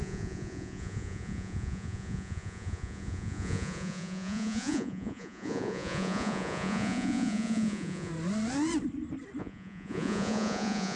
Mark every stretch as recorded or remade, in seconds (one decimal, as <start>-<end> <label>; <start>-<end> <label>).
0.0-8.1 remade; 8.1-9.4 recorded; 9.4-11.0 remade